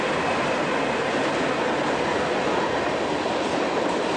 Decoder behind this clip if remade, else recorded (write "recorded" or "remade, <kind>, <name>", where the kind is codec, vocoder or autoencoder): recorded